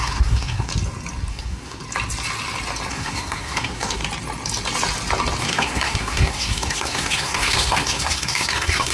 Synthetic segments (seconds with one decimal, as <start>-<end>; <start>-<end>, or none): 0.0-0.7; 1.3-1.8; 2.9-4.0; 5.4-8.9